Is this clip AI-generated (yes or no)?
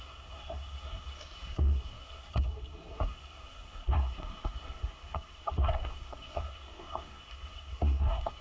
yes